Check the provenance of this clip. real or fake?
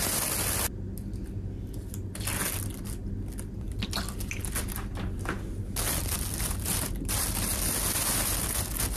real